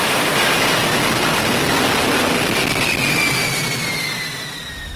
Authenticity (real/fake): real